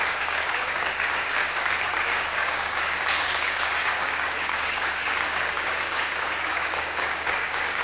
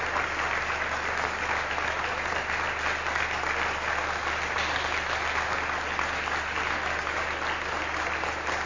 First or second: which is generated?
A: first